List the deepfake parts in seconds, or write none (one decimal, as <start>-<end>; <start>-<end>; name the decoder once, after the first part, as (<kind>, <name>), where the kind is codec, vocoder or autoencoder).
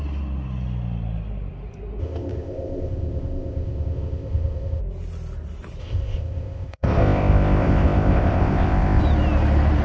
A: 2.0-4.8 (codec, ZipCodec); 5.8-9.0